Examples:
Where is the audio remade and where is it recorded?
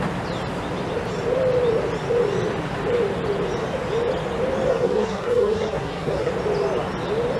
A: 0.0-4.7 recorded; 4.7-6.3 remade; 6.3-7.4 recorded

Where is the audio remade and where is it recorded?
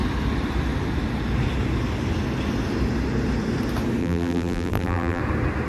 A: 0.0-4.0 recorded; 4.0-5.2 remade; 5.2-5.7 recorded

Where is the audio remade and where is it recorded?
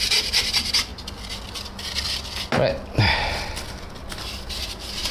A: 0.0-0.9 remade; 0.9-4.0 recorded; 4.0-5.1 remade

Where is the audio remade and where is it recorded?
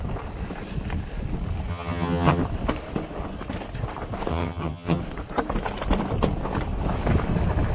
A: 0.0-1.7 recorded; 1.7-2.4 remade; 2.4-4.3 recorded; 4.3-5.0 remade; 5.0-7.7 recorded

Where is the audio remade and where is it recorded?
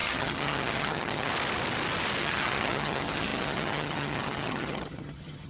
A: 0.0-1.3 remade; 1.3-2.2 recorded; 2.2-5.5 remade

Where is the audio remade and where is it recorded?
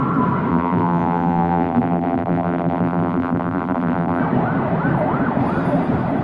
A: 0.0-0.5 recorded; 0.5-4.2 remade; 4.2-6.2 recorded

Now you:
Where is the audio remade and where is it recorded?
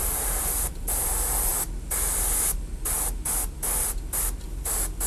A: 0.0-1.1 remade; 1.1-5.1 recorded